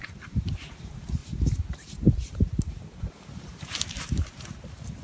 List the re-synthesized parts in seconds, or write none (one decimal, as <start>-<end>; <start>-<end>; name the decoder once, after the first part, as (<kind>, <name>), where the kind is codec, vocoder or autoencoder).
0.0-5.0 (vocoder, BigVGAN v2)